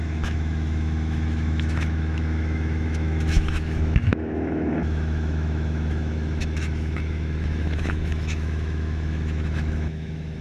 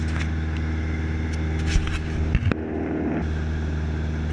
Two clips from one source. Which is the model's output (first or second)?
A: first